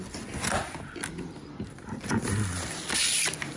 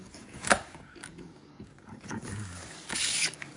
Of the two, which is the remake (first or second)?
second